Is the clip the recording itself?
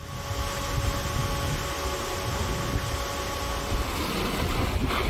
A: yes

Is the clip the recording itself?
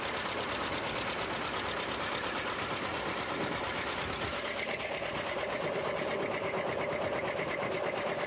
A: no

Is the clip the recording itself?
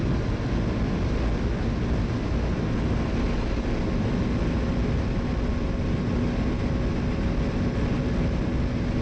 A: yes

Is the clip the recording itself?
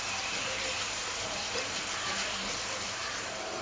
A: no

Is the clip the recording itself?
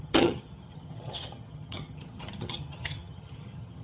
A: no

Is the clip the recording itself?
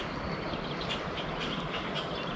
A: yes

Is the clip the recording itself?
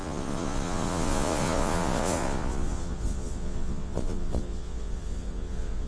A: no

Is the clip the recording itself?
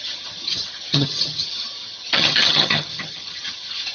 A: no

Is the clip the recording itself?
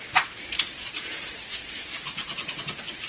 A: yes